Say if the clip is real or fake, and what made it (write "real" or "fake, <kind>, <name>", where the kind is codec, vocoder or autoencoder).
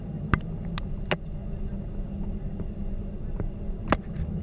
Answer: real